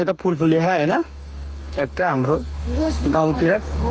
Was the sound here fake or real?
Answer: fake